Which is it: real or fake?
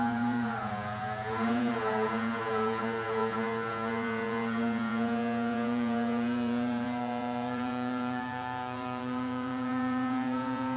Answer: fake